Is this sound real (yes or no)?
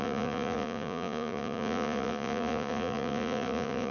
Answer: no